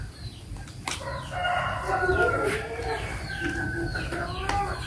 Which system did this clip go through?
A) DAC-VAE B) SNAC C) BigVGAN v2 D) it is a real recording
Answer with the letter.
D